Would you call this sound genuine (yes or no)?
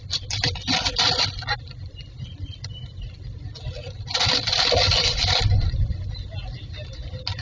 yes